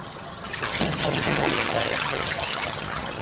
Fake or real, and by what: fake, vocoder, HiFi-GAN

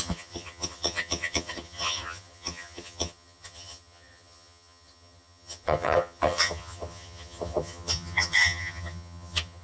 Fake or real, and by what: fake, vocoder, HiFi-GAN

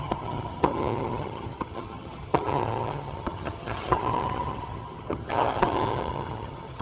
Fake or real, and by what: fake, vocoder, HiFi-GAN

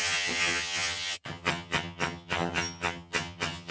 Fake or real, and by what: fake, vocoder, HiFi-GAN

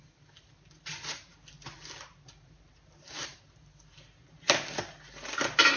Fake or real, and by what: real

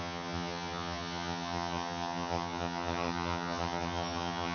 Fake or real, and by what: fake, vocoder, HiFi-GAN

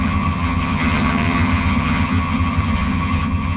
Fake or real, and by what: fake, vocoder, HiFi-GAN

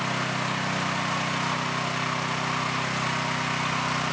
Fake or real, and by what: real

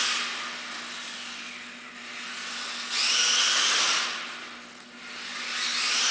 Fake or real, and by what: real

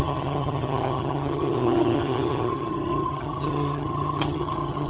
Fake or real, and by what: fake, vocoder, HiFi-GAN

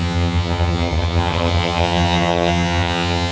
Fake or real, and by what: fake, vocoder, HiFi-GAN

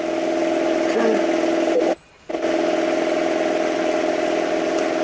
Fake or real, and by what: real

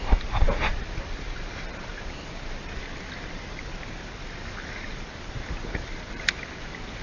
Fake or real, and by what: real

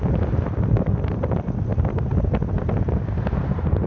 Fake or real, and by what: real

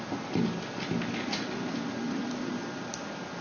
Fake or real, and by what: real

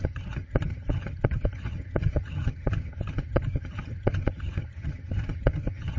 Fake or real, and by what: fake, vocoder, HiFi-GAN